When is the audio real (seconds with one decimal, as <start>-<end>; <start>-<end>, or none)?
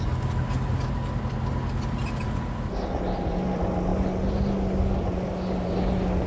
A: 0.0-6.3